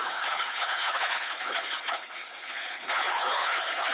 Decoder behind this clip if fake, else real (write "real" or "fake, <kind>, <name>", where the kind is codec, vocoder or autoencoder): fake, codec, HILCodec